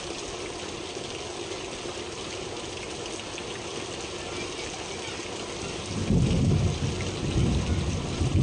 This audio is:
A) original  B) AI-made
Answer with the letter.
A